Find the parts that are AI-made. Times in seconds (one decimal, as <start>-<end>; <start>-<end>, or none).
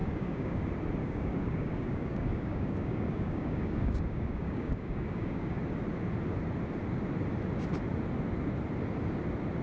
0.0-0.6; 1.0-5.6